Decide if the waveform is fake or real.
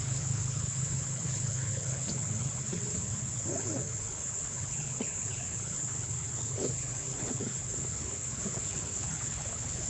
fake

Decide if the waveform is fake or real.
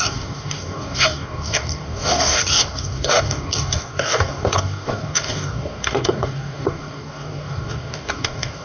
fake